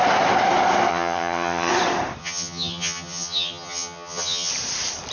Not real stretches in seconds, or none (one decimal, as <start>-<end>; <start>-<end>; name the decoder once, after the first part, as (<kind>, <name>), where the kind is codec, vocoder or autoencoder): 0.9-1.7 (vocoder, HiFi-GAN); 2.2-4.5